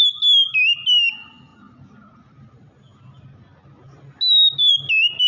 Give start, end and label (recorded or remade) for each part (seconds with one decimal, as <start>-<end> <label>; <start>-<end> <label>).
0.0-5.3 recorded